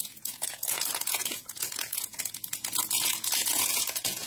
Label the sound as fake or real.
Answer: fake